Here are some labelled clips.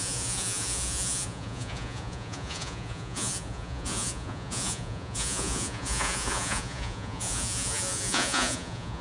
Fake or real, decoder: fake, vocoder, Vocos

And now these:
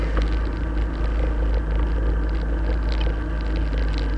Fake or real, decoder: real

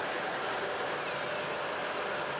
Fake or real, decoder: real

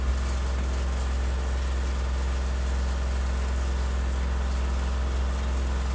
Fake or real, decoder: real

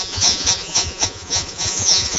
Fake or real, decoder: fake, vocoder, Vocos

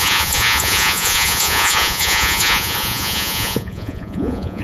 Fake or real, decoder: fake, vocoder, Vocos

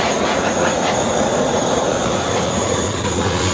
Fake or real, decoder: fake, vocoder, Vocos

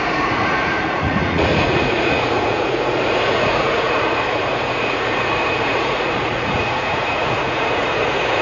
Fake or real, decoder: fake, vocoder, Vocos